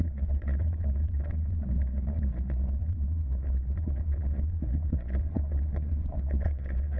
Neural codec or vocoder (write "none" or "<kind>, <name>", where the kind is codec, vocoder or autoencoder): vocoder, Vocos